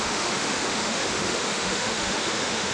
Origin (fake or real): fake